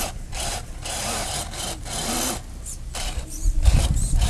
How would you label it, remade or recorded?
recorded